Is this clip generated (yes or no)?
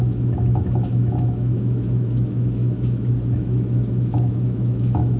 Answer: yes